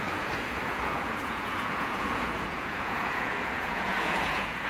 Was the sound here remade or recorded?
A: remade